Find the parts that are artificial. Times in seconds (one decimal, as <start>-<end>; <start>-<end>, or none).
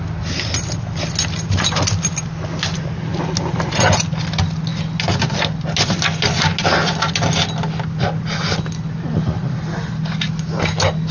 none